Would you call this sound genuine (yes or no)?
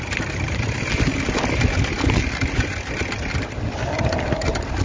yes